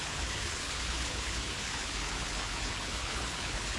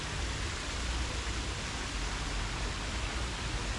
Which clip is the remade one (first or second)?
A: first